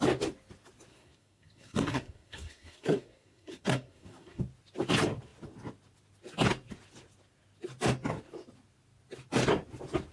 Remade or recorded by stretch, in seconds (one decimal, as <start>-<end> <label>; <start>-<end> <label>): 0.0-0.9 recorded; 0.9-4.4 remade; 4.4-10.1 recorded